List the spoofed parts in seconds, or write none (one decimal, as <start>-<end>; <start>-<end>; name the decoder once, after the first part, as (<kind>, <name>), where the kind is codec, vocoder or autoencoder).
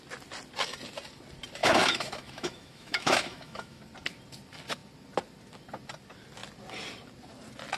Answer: 1.6-3.8 (autoencoder, DAC-VAE)